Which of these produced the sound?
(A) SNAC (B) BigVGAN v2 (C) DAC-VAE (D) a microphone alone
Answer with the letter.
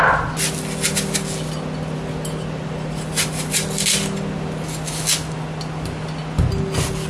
D